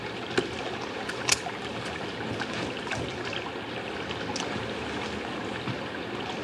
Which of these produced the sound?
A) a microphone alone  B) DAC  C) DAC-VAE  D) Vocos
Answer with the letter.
A